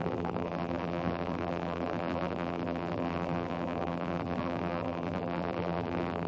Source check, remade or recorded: remade